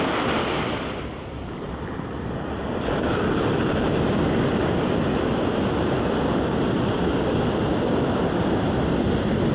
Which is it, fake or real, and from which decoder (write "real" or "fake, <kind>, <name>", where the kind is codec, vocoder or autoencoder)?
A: fake, vocoder, BigVGAN v2